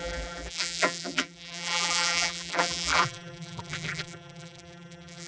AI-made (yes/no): yes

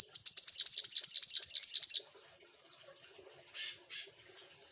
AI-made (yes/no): no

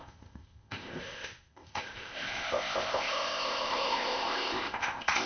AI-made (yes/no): yes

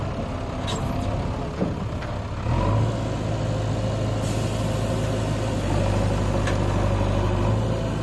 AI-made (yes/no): no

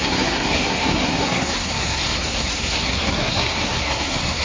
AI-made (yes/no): yes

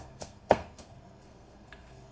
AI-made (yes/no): yes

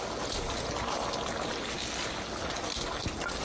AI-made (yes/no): no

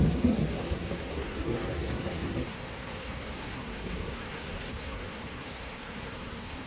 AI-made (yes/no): yes